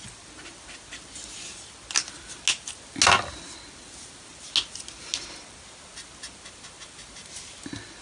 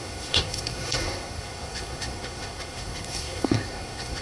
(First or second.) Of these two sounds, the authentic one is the first